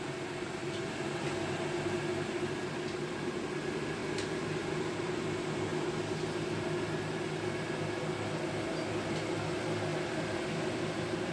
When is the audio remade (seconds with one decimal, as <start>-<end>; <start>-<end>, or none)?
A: 4.0-5.1; 9.9-11.3